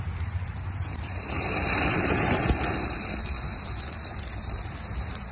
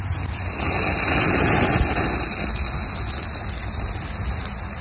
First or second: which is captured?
second